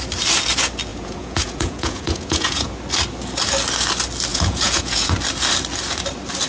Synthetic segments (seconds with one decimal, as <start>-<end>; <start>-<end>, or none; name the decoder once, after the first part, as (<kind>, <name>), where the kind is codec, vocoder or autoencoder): 0.9-2.7 (vocoder, Vocos); 4.3-5.1